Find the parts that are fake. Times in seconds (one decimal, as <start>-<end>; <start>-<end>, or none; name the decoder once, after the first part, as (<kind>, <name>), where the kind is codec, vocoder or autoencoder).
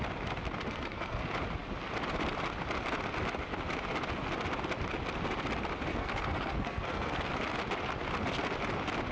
0.6-1.2 (codec, SNAC); 5.9-7.3